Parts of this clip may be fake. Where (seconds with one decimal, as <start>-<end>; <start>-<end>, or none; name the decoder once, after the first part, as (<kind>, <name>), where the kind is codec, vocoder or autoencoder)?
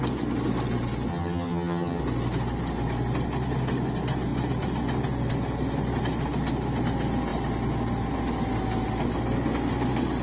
1.1-2.0 (vocoder, HiFi-GAN)